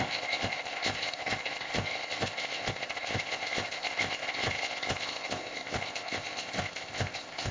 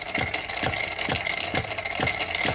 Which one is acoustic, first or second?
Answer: second